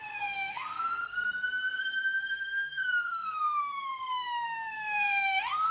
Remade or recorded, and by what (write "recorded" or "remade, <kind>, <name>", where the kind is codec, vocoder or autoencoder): remade, codec, SNAC